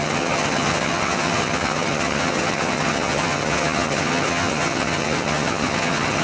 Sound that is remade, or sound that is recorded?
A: remade